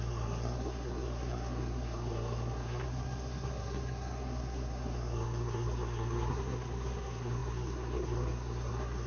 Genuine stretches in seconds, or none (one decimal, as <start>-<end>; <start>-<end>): none